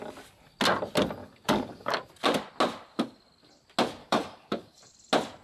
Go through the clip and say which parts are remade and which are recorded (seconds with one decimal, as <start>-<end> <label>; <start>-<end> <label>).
0.0-1.2 recorded; 1.2-2.0 remade; 2.0-4.0 recorded; 4.0-4.9 remade; 4.9-5.4 recorded